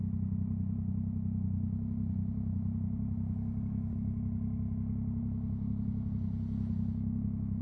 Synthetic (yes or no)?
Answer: no